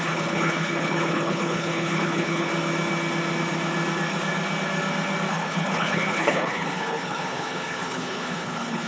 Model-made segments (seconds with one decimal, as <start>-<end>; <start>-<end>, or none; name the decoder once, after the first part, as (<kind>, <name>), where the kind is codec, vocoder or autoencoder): 0.0-2.5 (codec, HILCodec); 5.3-8.9